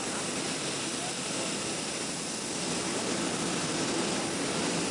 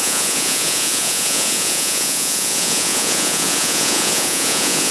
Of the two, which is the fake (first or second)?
second